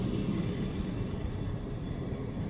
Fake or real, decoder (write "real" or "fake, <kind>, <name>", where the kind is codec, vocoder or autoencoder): real